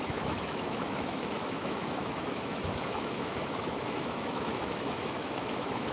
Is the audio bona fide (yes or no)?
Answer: no